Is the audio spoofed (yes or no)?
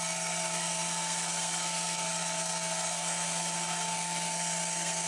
yes